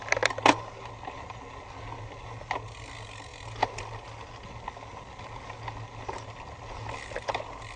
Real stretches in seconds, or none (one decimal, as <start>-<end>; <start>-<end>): 0.0-7.8